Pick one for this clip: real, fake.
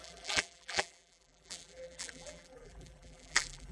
fake